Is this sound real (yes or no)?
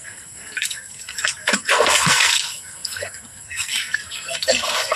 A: no